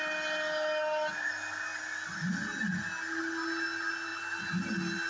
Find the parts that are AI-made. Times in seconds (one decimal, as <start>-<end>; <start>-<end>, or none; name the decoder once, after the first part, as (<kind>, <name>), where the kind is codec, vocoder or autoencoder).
none